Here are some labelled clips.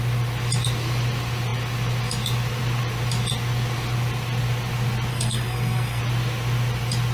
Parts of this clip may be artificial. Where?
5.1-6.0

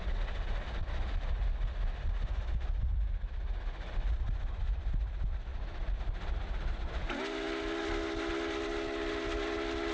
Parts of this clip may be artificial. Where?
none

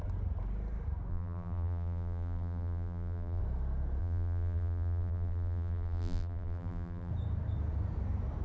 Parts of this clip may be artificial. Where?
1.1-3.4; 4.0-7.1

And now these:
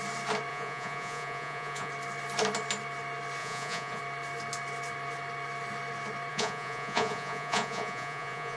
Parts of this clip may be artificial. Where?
0.5-1.9; 3.4-4.0; 6.3-8.6

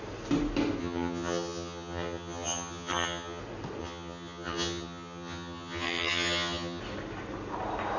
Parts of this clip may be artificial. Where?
0.8-3.4; 3.8-6.8

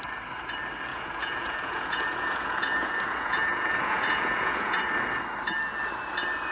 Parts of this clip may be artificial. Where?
0.9-4.8